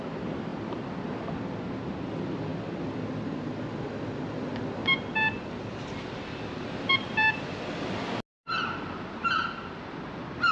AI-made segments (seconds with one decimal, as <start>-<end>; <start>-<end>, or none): 0.5-1.0; 4.8-8.0; 9.2-9.8